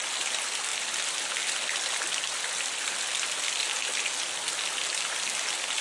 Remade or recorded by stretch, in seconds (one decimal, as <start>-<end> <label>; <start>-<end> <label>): 0.0-5.8 recorded